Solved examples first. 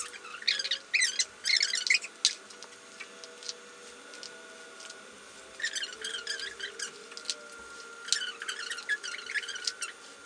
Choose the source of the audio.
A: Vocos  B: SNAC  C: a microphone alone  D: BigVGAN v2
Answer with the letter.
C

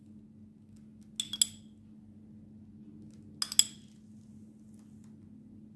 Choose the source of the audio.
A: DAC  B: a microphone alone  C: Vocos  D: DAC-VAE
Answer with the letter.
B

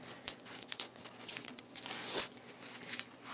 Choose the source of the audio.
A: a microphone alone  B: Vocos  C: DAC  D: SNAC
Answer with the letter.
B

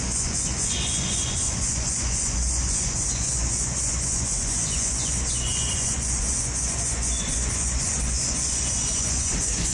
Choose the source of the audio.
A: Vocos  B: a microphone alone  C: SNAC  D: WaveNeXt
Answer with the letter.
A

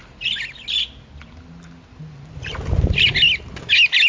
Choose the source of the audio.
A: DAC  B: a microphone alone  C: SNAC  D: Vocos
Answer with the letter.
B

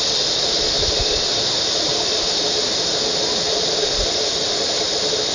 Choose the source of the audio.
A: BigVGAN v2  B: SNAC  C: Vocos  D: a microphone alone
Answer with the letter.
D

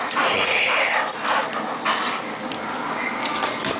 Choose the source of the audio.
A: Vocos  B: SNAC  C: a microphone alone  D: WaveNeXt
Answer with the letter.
C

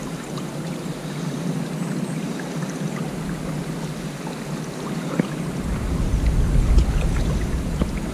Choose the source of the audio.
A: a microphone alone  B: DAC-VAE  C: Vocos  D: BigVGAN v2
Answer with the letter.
A